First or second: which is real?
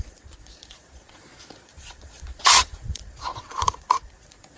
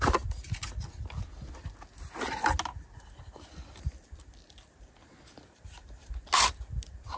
second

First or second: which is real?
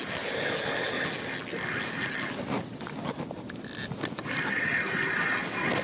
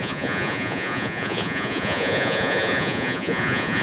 first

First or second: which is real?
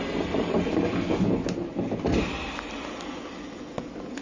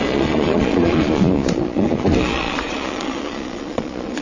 first